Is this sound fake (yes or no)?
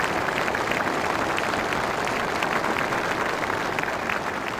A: no